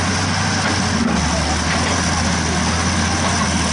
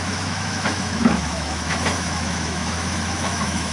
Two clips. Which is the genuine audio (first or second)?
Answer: first